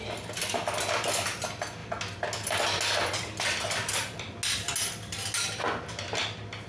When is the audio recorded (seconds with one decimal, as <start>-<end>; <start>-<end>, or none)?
0.0-6.7